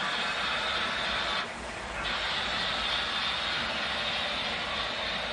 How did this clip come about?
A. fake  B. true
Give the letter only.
B